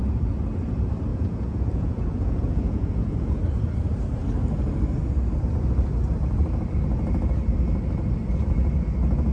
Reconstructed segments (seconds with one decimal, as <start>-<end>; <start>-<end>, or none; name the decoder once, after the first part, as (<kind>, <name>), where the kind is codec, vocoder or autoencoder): 1.1-3.4 (vocoder, Vocos)